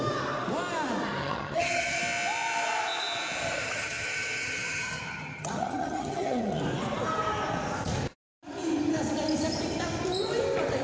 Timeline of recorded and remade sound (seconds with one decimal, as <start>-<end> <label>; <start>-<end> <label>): 0.0-1.2 recorded; 1.2-2.0 remade; 2.0-3.4 recorded; 3.4-6.6 remade; 6.6-10.8 recorded

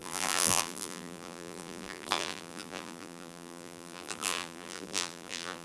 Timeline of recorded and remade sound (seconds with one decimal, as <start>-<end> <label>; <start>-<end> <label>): 0.0-5.6 remade

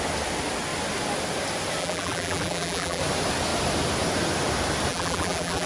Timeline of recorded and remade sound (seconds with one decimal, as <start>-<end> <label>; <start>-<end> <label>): 0.0-1.8 recorded; 1.8-3.0 remade; 3.0-4.9 recorded; 4.9-5.7 remade

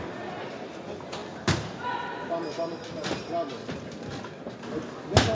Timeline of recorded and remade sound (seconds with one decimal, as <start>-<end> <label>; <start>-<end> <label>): 0.0-5.3 recorded

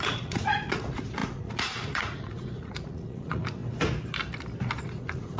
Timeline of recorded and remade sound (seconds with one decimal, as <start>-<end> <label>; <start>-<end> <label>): 0.0-3.6 remade; 3.6-4.8 recorded; 4.8-5.4 remade

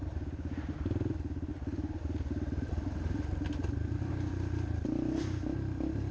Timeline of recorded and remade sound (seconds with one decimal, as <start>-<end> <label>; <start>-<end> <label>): 0.0-1.5 recorded; 1.5-4.1 remade; 4.1-6.1 recorded

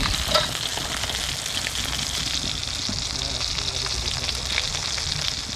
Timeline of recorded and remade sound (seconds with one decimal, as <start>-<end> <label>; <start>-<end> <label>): 0.0-0.7 remade; 0.7-2.2 recorded; 2.2-2.6 remade; 2.6-3.8 recorded; 3.8-4.5 remade; 4.5-5.6 recorded

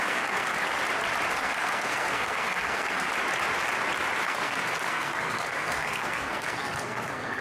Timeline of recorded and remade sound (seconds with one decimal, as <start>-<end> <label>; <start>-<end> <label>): 0.0-0.5 remade; 0.5-1.3 recorded; 1.3-3.1 remade; 3.1-4.2 recorded; 4.2-7.4 remade